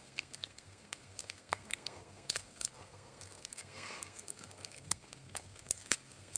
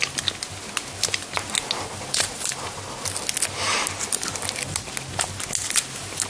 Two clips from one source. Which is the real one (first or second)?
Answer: second